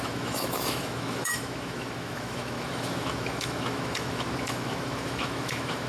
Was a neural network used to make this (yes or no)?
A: yes